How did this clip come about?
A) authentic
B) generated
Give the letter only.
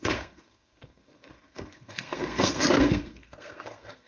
B